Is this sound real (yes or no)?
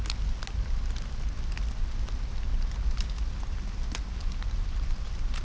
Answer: yes